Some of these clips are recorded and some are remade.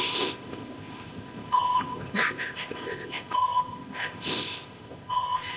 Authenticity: remade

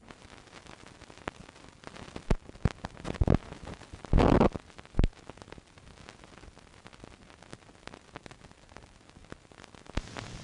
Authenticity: recorded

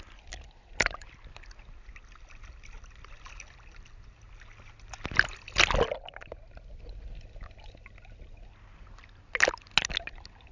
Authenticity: recorded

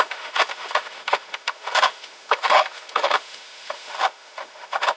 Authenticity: remade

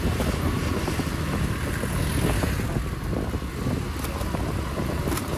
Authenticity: recorded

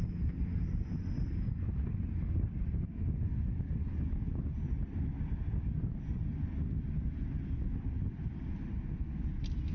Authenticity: recorded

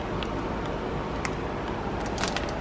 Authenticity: recorded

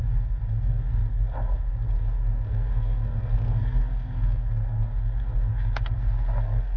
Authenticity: remade